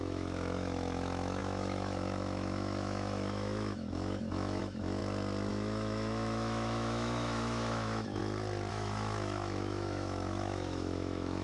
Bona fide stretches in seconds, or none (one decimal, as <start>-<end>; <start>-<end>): 5.0-5.5; 8.2-8.7